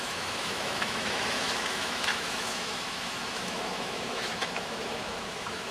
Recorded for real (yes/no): no